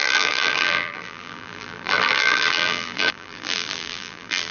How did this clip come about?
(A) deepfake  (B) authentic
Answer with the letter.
A